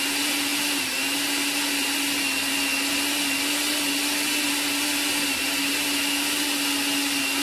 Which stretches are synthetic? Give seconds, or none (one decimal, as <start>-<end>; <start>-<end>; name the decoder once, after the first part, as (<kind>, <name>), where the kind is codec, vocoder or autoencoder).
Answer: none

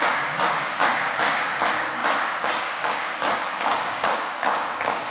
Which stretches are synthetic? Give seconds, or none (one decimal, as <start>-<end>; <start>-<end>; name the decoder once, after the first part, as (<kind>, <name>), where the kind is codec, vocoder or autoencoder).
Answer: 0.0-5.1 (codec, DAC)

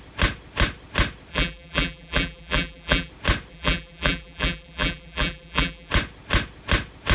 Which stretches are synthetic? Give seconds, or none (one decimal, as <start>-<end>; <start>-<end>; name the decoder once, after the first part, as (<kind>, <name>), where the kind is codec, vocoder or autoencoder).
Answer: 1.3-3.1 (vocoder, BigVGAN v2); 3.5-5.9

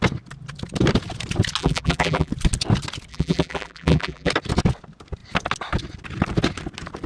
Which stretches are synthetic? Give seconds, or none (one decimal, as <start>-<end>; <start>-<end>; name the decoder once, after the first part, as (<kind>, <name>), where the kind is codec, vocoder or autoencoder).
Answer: 1.6-2.3 (vocoder, BigVGAN v2); 3.1-4.3

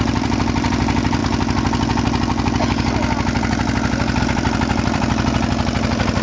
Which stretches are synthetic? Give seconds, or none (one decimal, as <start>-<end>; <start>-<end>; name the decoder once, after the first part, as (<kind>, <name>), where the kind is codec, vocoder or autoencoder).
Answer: 0.0-1.2 (vocoder, BigVGAN v2); 4.2-6.2

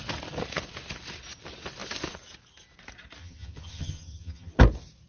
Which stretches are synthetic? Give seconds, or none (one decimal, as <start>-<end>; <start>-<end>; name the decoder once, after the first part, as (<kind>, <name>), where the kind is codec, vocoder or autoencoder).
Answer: 3.2-4.5 (vocoder, HiFi-GAN)

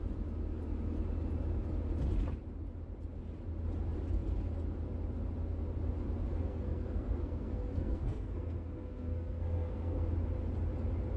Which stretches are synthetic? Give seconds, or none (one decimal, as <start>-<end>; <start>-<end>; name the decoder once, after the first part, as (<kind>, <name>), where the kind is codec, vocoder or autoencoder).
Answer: 6.3-10.1 (codec, SNAC)